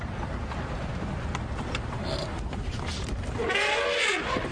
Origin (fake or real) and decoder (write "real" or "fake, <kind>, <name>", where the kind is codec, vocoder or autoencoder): real